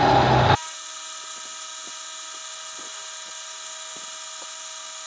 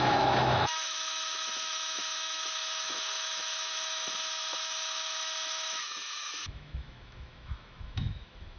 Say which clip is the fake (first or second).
second